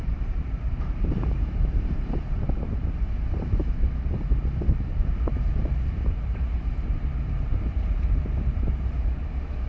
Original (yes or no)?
no